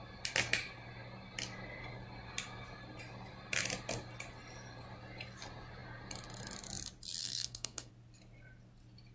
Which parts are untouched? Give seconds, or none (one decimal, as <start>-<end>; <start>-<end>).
0.0-7.2; 7.9-9.1